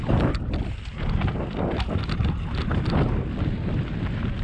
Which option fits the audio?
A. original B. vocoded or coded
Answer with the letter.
A